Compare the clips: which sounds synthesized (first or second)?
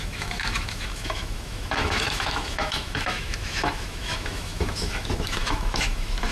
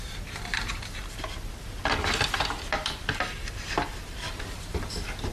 first